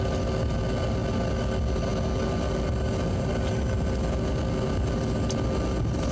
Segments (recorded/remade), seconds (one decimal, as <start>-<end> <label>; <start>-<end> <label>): 0.0-6.1 recorded